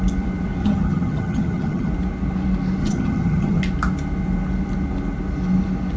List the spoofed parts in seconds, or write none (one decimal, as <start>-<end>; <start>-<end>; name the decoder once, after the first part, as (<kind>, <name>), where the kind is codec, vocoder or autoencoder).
0.6-1.9 (vocoder, HiFi-GAN); 2.8-3.6